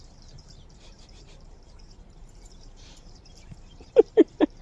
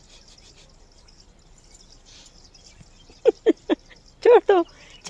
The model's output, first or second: first